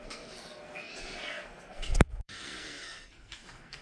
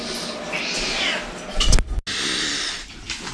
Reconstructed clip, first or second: first